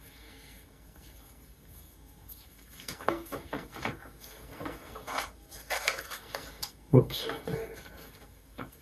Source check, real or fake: fake